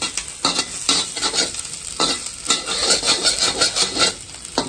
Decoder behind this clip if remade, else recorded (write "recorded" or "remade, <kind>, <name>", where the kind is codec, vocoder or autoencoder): recorded